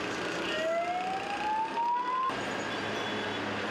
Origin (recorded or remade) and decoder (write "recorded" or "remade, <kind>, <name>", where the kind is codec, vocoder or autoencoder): recorded